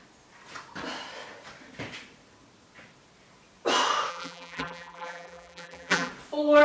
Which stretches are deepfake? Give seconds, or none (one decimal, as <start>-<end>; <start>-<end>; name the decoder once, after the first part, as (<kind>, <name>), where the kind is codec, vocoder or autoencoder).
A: 4.1-6.1 (vocoder, BigVGAN v2)